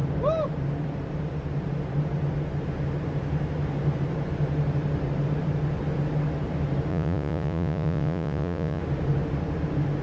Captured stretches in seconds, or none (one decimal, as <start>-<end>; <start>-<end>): 0.0-6.9; 8.8-10.0